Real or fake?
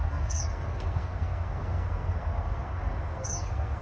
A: fake